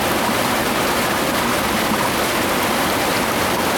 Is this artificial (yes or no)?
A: no